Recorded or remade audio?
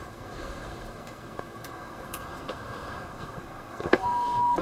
remade